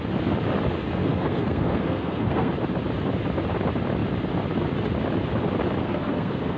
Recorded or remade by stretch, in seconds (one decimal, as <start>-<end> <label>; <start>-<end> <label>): 0.0-1.0 recorded; 1.0-2.5 remade; 2.5-5.8 recorded; 5.8-6.6 remade